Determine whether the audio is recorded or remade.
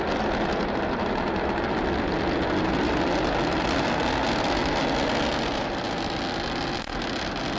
recorded